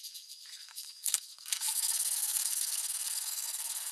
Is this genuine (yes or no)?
no